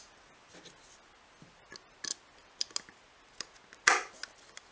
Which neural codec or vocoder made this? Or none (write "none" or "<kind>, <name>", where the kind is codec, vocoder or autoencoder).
none